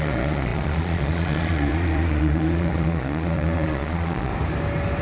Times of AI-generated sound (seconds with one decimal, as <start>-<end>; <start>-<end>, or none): 0.0-4.3